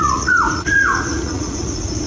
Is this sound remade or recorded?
remade